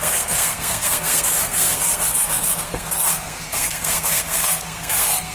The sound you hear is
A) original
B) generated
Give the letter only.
B